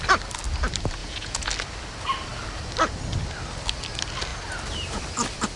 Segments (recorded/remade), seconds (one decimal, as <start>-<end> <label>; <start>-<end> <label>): 0.0-1.0 recorded; 1.0-1.5 remade; 1.5-5.6 recorded